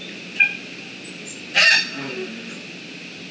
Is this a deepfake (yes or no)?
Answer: no